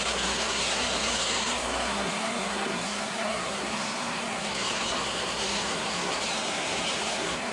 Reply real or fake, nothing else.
fake